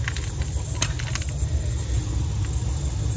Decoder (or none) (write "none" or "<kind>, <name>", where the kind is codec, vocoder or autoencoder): none